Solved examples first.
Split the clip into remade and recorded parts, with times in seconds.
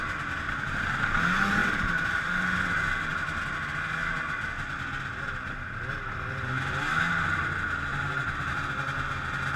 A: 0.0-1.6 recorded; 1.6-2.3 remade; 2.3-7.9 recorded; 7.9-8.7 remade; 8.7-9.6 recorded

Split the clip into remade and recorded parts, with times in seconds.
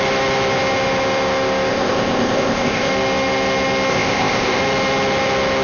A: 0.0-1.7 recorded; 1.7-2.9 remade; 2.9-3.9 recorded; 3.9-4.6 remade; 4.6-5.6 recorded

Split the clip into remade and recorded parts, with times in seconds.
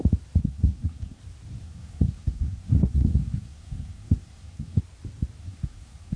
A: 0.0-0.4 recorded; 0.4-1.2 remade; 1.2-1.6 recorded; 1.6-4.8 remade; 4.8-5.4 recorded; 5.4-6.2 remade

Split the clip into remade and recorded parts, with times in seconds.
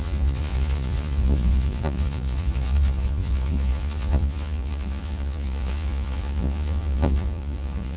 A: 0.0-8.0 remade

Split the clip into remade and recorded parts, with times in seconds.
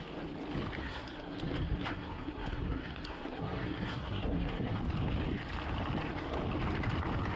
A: 0.0-0.8 recorded; 0.8-4.8 remade; 4.8-7.4 recorded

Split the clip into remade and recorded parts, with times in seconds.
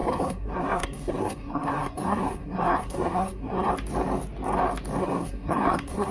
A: 0.0-3.7 remade; 3.7-5.0 recorded; 5.0-6.1 remade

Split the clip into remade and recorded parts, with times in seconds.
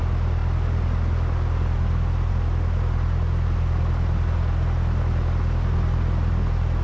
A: 0.0-6.8 recorded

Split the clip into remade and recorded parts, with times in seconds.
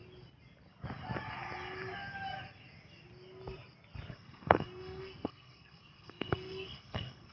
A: 0.0-4.1 recorded; 4.1-7.3 remade